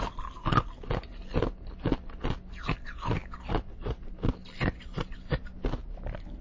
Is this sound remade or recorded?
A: recorded